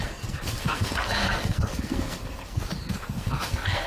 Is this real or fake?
fake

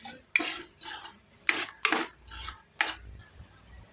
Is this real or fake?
real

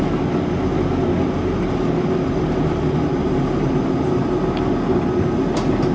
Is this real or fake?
real